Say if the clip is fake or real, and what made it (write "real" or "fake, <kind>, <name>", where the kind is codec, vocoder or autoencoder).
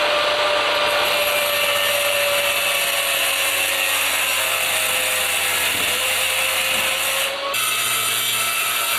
real